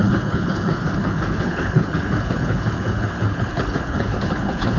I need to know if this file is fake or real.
fake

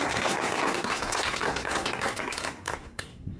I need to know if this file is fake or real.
fake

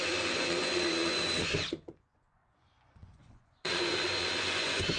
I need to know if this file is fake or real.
fake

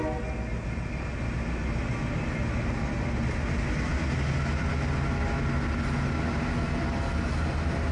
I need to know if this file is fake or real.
real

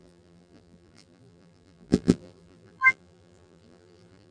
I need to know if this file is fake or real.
fake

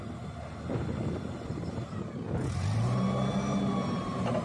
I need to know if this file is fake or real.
real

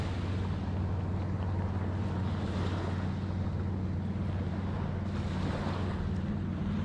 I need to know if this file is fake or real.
real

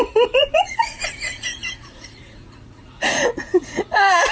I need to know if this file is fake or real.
fake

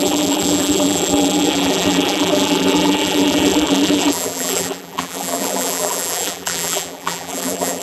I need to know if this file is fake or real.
fake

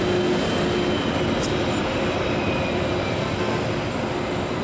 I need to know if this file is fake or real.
real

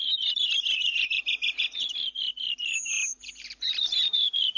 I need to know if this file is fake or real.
fake